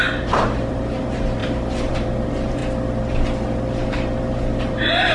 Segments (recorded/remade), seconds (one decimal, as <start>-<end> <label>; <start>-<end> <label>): 0.0-2.6 remade; 2.6-4.6 recorded; 4.6-5.1 remade